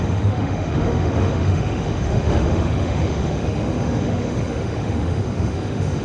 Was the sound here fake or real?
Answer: fake